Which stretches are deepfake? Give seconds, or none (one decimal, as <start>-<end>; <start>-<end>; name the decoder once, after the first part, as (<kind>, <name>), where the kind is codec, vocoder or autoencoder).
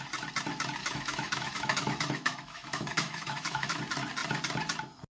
0.8-3.8 (autoencoder, DAC-VAE)